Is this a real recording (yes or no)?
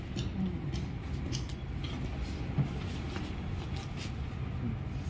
yes